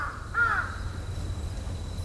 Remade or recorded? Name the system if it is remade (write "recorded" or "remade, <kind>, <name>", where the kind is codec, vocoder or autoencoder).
recorded